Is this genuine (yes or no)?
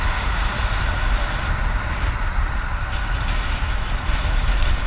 yes